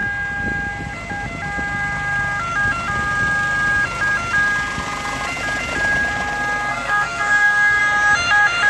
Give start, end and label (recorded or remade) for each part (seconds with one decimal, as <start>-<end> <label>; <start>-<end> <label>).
0.0-6.7 recorded; 6.7-7.8 remade; 7.8-8.7 recorded